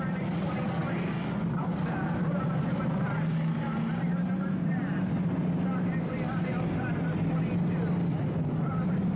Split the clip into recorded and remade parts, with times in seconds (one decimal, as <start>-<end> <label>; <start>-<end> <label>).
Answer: 0.0-9.2 recorded